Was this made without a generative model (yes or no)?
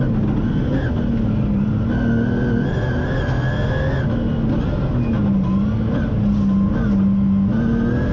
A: yes